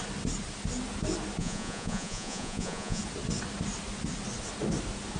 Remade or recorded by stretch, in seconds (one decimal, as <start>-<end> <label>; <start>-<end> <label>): 0.0-1.4 recorded; 1.4-3.0 remade; 3.0-5.2 recorded